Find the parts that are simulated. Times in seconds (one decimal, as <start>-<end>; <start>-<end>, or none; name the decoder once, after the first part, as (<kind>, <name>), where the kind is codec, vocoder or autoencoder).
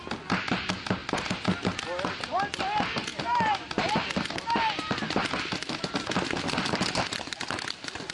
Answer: 3.1-3.7 (vocoder, BigVGAN v2)